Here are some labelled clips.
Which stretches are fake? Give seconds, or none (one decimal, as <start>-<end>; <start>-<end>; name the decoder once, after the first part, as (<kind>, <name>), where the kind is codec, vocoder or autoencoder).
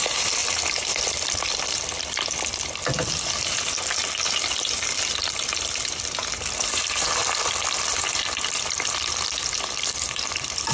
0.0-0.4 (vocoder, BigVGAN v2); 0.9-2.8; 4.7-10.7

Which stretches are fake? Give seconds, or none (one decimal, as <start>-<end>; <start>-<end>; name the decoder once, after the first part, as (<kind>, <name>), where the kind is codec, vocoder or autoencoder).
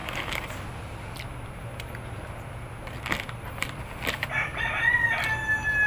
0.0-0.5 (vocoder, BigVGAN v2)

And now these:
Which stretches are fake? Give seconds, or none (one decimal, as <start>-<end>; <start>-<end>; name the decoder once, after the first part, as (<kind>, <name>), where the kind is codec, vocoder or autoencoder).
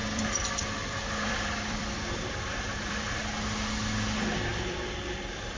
0.0-3.4 (vocoder, BigVGAN v2); 4.5-5.0